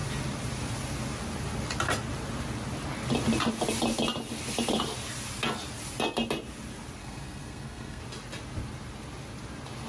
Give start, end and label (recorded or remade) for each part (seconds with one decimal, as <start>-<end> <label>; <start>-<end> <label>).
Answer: 0.0-7.0 recorded; 7.0-8.0 remade; 8.0-9.9 recorded